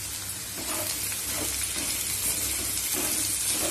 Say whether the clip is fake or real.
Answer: real